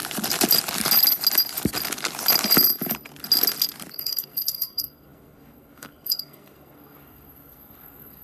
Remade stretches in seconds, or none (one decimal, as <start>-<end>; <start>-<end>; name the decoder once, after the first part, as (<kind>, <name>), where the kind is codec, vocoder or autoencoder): 3.9-8.2 (codec, SNAC)